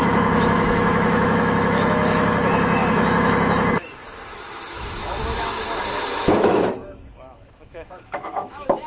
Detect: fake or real fake